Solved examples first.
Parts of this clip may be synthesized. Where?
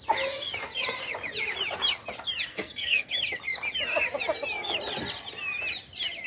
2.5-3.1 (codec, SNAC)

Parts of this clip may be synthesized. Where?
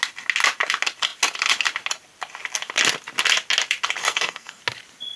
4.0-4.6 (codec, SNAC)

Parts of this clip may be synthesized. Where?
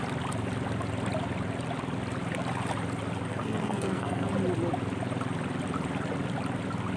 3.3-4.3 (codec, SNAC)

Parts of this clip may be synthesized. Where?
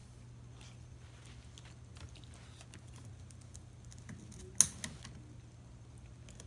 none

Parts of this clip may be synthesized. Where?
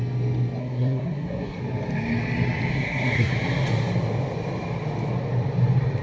0.6-1.6 (codec, SNAC); 2.7-3.3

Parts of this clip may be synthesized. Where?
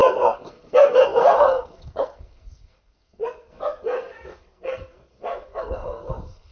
0.0-6.5 (codec, SNAC)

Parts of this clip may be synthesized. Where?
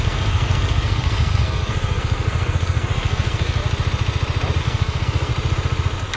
0.0-3.6 (codec, SNAC); 4.6-5.3